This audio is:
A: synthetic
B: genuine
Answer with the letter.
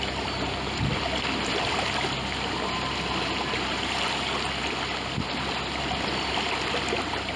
B